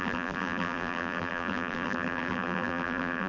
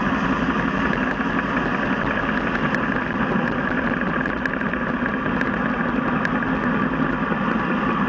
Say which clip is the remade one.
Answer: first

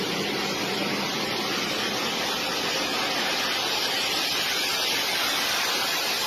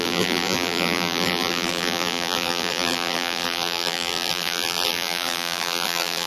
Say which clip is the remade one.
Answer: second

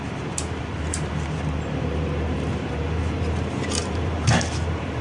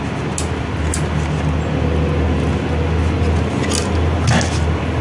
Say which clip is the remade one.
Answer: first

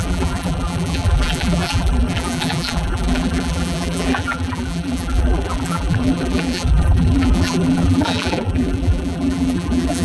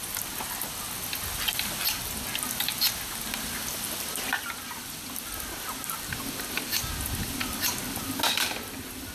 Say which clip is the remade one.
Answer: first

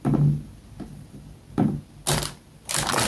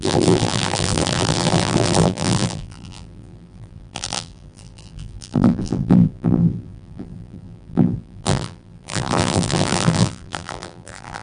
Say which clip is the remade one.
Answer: second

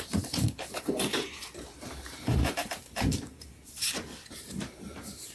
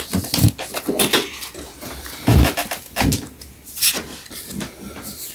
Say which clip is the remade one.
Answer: first